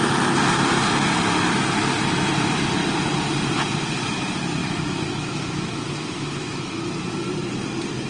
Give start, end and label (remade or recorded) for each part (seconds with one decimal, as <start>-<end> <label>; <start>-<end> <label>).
0.0-4.6 recorded; 4.6-6.8 remade; 6.8-8.1 recorded